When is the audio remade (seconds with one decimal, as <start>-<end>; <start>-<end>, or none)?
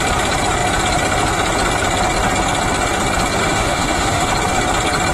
3.4-4.3